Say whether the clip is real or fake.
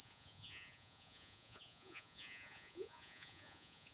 fake